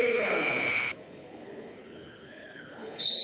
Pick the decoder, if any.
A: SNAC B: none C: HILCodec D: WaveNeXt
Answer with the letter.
C